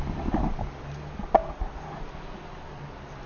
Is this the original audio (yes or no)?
no